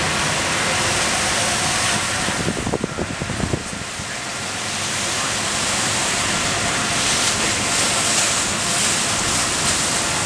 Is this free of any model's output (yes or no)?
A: yes